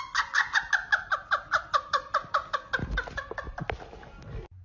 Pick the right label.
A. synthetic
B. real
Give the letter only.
B